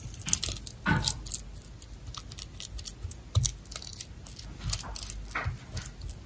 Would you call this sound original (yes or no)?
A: yes